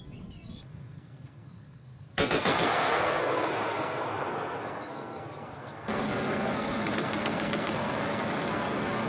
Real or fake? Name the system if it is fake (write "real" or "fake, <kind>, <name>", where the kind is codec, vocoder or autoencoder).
fake, codec, SNAC